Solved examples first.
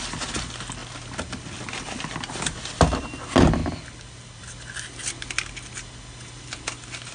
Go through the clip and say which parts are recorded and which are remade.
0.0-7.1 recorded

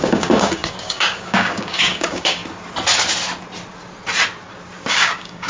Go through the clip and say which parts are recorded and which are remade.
0.0-2.4 remade; 2.4-4.9 recorded; 4.9-5.5 remade

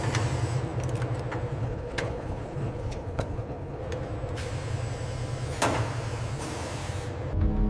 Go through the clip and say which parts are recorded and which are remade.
0.0-1.6 recorded; 1.6-3.8 remade; 3.8-7.7 recorded

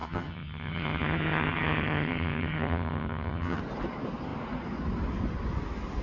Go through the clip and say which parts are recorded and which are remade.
0.0-3.6 remade; 3.6-6.0 recorded

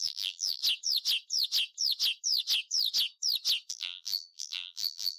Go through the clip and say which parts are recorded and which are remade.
0.0-0.6 remade; 0.6-3.7 recorded; 3.7-5.2 remade

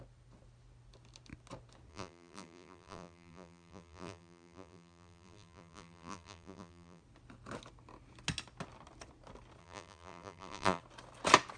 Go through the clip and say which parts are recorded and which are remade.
0.0-1.9 recorded; 1.9-7.0 remade; 7.0-9.6 recorded; 9.6-10.8 remade; 10.8-11.6 recorded